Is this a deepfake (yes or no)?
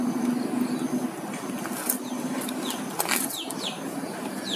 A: no